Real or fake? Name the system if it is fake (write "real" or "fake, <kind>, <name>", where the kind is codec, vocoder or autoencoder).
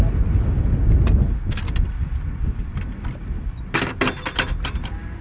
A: real